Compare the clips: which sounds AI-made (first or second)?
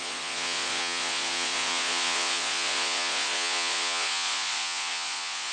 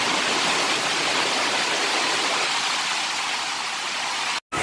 first